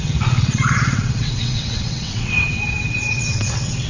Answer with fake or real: fake